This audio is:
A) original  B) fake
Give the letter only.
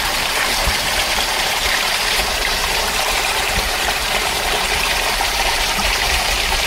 B